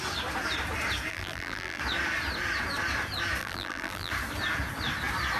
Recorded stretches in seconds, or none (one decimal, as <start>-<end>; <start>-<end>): 0.0-1.1; 1.8-3.4; 4.1-5.4

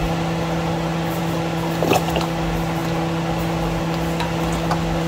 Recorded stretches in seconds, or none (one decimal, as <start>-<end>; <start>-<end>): 0.0-5.1

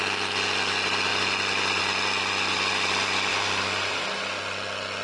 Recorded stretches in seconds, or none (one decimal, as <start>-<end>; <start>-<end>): 0.0-1.1; 1.8-3.3; 4.0-5.0

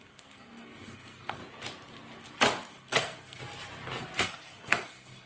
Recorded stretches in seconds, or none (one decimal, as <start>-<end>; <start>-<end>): 1.4-2.7; 3.4-4.2

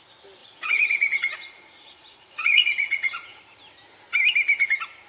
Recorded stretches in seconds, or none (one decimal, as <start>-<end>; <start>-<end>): 0.0-0.4; 3.4-5.1